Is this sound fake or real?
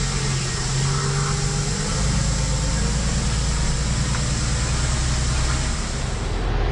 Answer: real